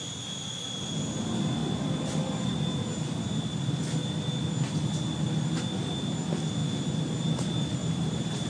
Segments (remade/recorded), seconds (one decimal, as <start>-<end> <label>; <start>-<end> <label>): 0.0-7.8 recorded; 7.8-8.5 remade